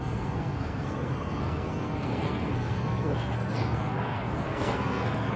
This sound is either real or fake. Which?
fake